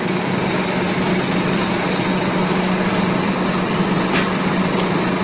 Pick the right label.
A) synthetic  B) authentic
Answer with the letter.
B